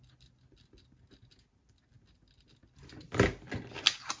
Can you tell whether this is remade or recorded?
recorded